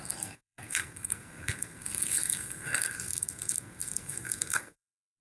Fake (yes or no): yes